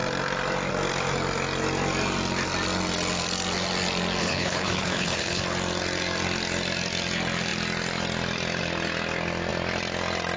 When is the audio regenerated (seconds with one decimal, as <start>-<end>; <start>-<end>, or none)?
4.2-5.4